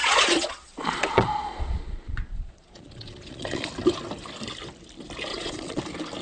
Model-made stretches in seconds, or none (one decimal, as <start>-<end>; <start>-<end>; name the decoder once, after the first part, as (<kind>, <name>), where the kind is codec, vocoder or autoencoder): 0.0-3.7 (vocoder, Vocos); 5.3-5.8

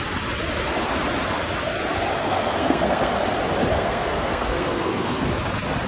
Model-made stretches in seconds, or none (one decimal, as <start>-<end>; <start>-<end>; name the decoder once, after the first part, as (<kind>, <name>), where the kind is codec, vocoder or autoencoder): 2.2-3.2 (codec, SNAC); 3.7-5.3

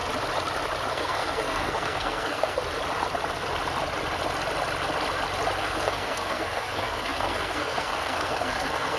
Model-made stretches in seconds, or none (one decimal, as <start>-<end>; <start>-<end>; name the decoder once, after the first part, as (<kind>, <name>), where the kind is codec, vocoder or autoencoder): 0.9-2.6 (codec, SNAC); 5.6-9.0

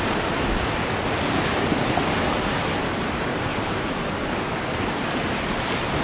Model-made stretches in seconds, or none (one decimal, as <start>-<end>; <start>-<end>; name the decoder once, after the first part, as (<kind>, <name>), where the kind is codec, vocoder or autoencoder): 3.5-4.1 (vocoder, BigVGAN v2)